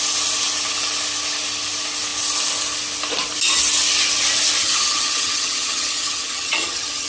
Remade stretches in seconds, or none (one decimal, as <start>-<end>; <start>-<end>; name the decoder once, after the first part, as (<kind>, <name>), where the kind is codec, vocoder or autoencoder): 4.6-7.1 (vocoder, HiFi-GAN)